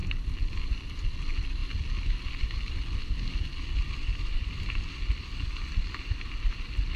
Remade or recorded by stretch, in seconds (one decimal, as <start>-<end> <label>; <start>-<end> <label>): 0.0-7.0 recorded